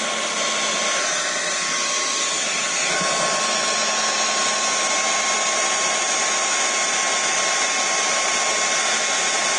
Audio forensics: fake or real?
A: real